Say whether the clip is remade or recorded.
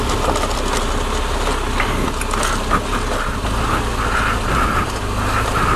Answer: recorded